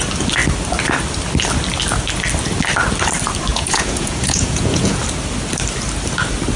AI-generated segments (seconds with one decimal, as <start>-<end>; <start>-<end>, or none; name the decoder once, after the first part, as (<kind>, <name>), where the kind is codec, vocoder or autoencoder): 3.5-5.0 (vocoder, Vocos)